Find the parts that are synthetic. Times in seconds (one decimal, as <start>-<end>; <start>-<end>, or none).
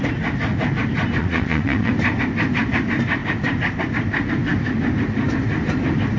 1.2-1.9